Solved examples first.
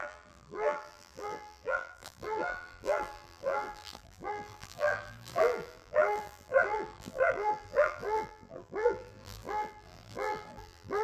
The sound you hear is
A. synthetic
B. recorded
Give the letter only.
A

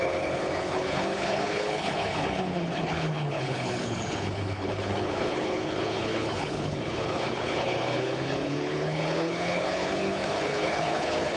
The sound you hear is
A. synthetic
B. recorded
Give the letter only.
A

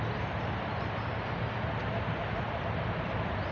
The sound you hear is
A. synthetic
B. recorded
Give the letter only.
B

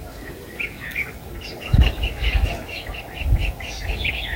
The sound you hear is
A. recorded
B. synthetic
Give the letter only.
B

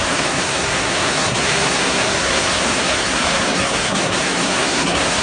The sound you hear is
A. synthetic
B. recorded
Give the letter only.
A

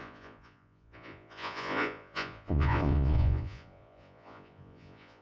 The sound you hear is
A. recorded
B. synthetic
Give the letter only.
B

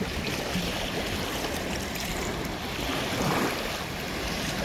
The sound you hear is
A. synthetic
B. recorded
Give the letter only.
B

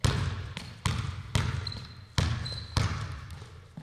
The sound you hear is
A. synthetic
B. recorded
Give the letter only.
B